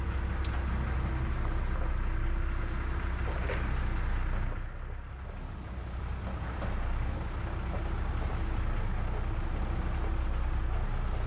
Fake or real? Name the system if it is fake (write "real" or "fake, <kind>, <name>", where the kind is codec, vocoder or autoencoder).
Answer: real